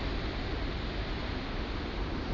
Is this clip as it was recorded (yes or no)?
yes